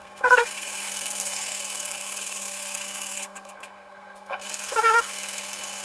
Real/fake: fake